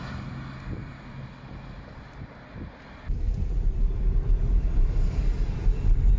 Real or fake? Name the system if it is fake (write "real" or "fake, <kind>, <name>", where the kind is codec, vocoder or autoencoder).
real